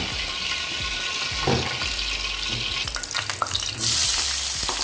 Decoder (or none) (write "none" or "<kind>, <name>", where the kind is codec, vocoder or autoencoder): none